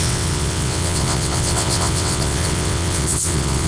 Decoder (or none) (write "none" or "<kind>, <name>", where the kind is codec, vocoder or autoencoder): vocoder, WaveNeXt